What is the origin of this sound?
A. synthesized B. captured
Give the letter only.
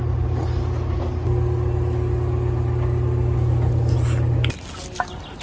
B